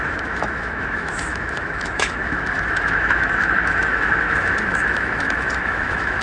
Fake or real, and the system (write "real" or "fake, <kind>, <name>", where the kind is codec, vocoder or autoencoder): fake, autoencoder, DAC-VAE